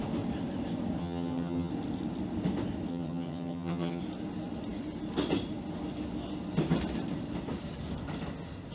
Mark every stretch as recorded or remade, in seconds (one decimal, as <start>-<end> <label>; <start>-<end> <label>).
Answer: 0.0-1.0 recorded; 1.0-1.7 remade; 1.7-2.9 recorded; 2.9-4.0 remade; 4.0-8.7 recorded